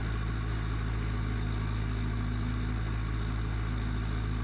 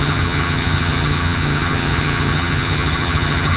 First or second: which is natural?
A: first